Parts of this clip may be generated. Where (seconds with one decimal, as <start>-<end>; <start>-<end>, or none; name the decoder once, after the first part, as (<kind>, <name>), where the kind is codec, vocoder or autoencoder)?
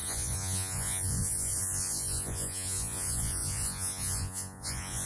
0.0-5.1 (vocoder, Vocos)